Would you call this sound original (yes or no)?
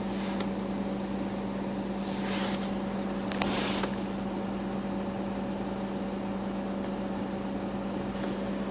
no